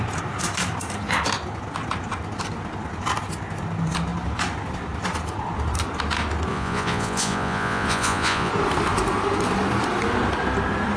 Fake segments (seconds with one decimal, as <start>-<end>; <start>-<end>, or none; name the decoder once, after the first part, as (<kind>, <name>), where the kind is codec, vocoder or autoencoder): 6.5-8.5 (vocoder, Vocos)